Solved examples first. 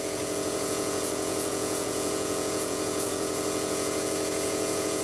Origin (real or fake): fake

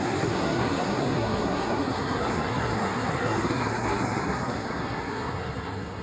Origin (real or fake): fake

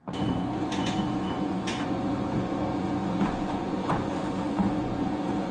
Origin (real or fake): fake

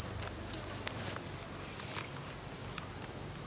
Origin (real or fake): real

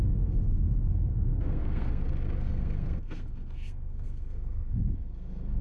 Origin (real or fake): fake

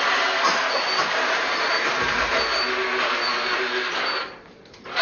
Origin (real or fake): real